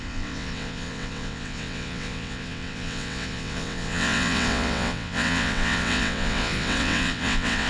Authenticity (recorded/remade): remade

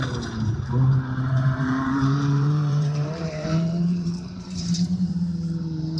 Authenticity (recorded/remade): remade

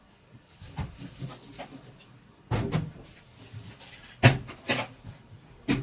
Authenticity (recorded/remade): recorded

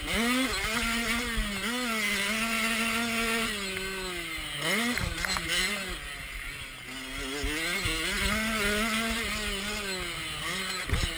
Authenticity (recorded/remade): recorded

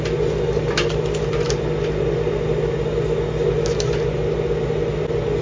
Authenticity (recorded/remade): recorded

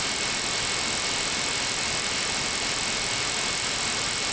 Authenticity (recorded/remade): recorded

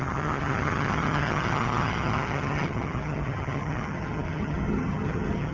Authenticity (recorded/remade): remade